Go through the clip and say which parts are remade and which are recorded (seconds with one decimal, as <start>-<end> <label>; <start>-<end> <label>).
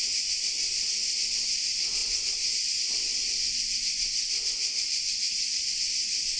0.0-6.4 recorded